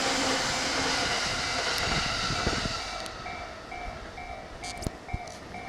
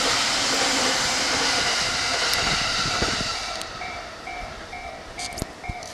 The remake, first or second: second